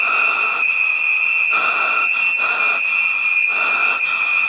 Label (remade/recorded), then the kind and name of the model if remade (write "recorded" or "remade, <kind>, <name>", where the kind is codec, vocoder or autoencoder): recorded